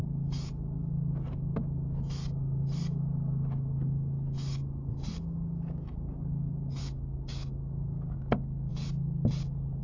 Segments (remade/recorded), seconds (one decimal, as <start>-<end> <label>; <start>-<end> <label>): 0.0-6.8 recorded; 6.8-8.7 remade; 8.7-9.8 recorded